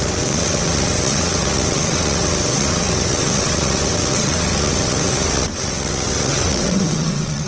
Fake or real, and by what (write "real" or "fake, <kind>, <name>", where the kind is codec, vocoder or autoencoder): fake, vocoder, WaveNeXt